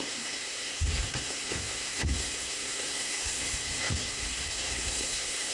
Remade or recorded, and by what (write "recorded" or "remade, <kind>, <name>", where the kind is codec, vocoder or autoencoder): remade, codec, SNAC